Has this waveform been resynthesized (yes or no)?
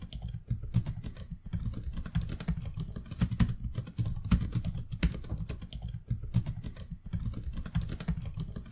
no